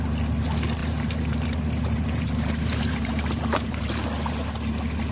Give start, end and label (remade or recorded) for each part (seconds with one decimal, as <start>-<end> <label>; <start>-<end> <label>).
0.0-0.8 recorded; 0.8-3.9 remade; 3.9-5.1 recorded